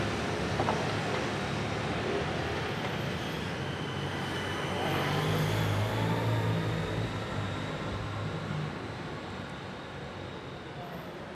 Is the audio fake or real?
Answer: real